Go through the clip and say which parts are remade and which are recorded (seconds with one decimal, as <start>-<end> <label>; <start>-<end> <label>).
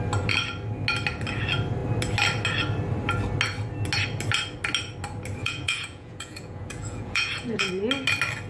0.0-5.4 recorded; 5.4-7.7 remade; 7.7-8.5 recorded